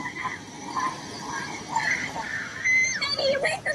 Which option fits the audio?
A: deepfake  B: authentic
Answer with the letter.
B